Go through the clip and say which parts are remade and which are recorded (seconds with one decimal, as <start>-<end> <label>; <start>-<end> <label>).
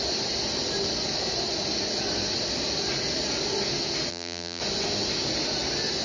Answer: 0.0-4.1 recorded; 4.1-4.6 remade; 4.6-6.0 recorded